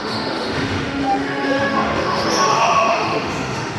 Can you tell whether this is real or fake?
fake